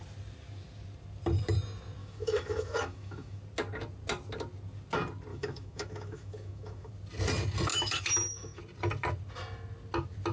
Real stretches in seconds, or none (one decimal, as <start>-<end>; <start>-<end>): 0.0-2.0; 3.4-5.3; 6.9-7.7; 8.6-10.3